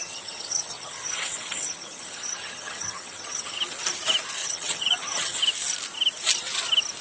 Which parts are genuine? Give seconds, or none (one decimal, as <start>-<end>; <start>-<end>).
3.6-4.4; 5.4-7.0